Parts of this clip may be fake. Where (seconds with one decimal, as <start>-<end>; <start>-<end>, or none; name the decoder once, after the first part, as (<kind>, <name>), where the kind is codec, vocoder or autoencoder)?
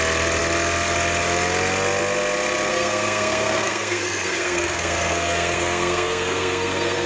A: 2.7-7.1 (codec, SNAC)